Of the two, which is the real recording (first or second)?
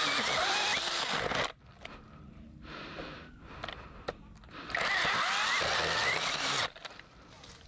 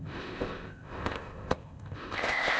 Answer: first